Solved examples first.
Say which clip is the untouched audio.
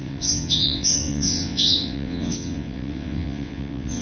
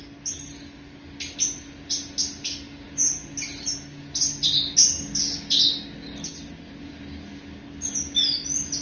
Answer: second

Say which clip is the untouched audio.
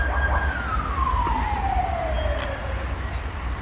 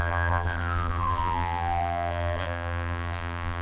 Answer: first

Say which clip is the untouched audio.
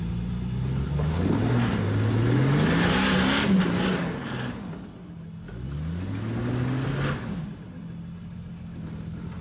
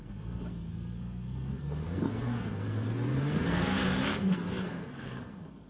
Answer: first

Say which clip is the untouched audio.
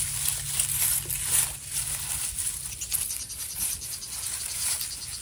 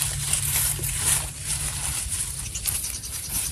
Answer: first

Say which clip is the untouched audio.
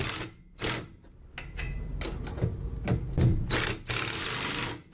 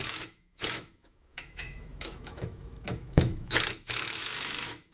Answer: first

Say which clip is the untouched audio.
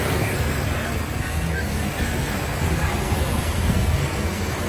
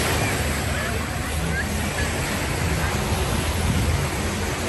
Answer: second